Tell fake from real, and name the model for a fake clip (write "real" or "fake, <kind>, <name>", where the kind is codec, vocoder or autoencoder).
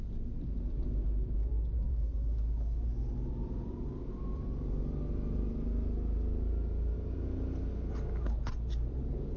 real